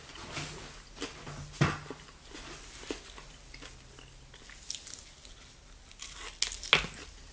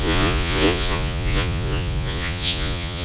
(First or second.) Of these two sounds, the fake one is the second